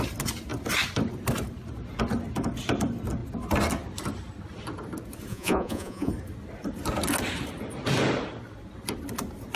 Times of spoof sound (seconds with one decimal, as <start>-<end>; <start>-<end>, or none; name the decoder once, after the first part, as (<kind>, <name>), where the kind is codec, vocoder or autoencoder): 5.3-6.1 (vocoder, Vocos)